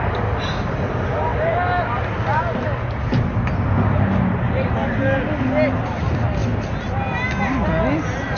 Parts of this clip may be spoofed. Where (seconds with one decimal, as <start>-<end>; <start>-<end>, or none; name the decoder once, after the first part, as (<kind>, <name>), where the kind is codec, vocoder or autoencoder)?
none